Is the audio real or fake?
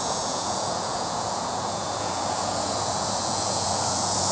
fake